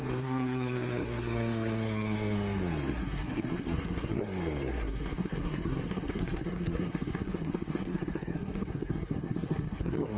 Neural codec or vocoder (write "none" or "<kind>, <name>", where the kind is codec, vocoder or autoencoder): codec, SNAC